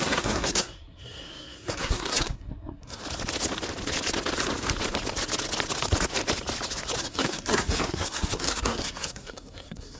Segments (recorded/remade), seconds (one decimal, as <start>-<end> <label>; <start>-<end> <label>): 0.0-3.0 remade; 3.0-7.0 recorded; 7.0-10.0 remade